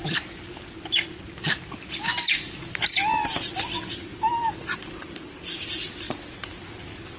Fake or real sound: real